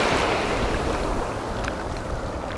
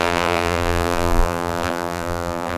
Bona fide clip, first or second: first